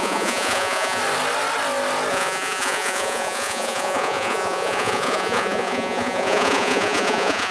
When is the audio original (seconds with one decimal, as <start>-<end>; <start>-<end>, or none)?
1.0-2.1